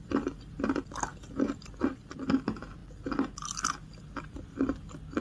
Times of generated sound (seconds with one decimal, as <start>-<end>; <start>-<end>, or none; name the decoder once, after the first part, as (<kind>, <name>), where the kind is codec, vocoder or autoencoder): none